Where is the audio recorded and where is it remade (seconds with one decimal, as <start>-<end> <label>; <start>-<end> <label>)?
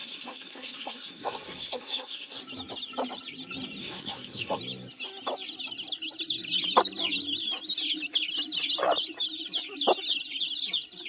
0.0-2.4 remade; 2.4-3.8 recorded; 3.8-4.6 remade; 4.6-11.1 recorded